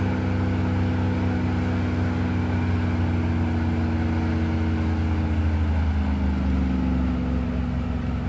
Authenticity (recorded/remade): recorded